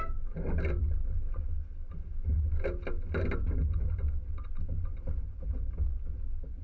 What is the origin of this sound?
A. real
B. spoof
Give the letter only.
A